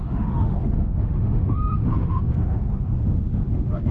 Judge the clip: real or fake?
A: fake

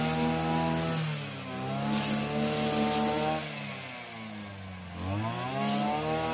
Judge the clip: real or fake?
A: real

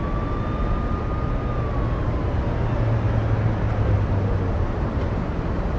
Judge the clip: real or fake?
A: real